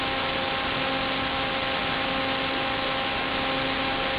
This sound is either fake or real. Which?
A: real